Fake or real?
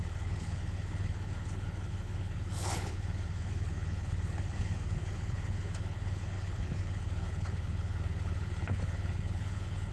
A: fake